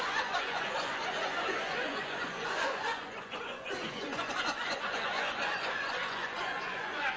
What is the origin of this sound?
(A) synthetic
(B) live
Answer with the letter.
A